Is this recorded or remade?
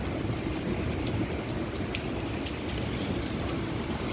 recorded